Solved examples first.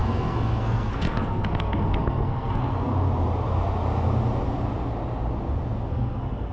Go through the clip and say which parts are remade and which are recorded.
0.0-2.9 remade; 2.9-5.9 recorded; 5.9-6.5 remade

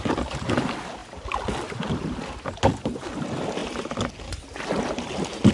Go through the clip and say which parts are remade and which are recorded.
0.0-5.5 recorded

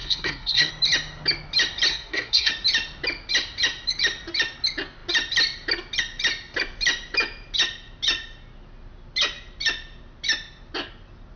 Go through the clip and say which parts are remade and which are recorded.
0.0-0.7 remade; 0.7-1.9 recorded; 1.9-2.5 remade; 2.5-11.4 recorded

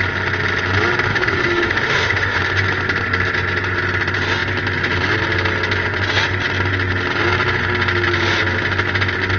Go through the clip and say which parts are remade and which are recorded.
0.0-1.1 recorded; 1.1-2.4 remade; 2.4-9.4 recorded

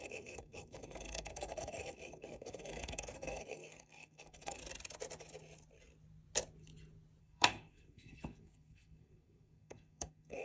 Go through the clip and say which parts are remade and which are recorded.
0.0-4.6 remade; 4.6-7.2 recorded; 7.2-10.4 remade